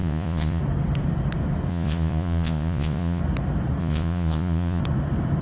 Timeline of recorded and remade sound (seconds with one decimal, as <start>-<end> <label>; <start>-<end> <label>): 0.0-0.6 remade; 0.6-1.7 recorded; 1.7-3.2 remade; 3.2-3.8 recorded; 3.8-4.8 remade; 4.8-5.4 recorded